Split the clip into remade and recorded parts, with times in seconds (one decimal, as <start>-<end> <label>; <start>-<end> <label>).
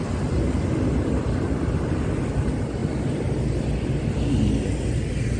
0.0-5.4 recorded